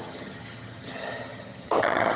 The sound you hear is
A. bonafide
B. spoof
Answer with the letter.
B